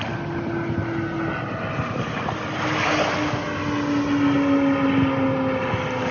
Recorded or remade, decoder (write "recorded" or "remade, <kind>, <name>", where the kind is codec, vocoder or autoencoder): recorded